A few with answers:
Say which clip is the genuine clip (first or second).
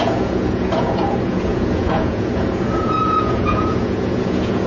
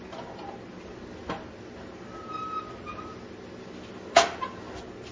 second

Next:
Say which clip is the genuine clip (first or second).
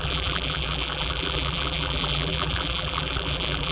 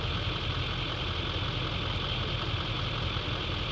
second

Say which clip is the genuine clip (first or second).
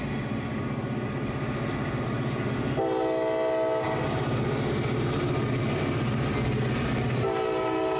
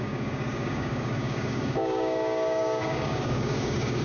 first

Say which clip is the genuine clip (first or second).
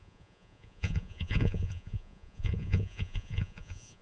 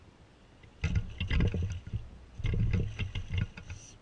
second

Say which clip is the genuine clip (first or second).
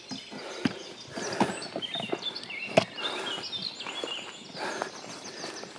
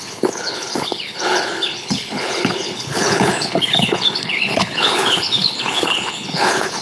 first